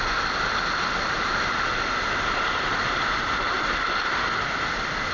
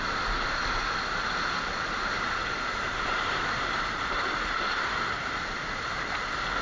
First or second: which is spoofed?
second